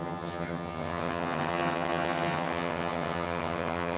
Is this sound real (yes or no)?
no